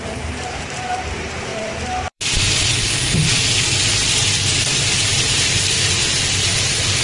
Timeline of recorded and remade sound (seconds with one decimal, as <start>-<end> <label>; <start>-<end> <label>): 0.0-7.0 remade